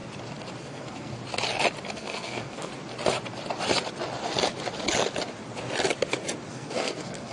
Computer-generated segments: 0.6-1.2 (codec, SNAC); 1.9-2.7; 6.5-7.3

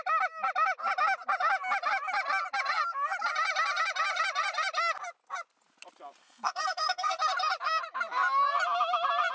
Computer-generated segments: 6.2-7.2 (codec, SNAC)

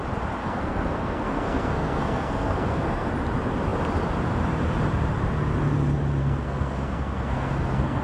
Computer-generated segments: 0.4-3.1 (codec, SNAC); 6.2-8.0